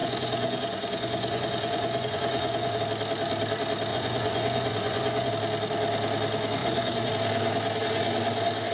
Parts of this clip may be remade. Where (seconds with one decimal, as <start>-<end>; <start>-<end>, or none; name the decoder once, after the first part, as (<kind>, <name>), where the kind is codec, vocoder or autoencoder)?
0.0-2.8 (vocoder, Vocos); 3.9-5.3; 6.6-7.1